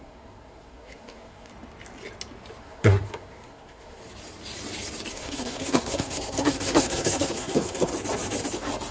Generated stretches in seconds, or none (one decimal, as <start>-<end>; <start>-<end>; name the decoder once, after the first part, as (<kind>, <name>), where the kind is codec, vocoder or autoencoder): 0.0-1.5 (codec, SNAC); 2.6-4.0; 5.1-7.9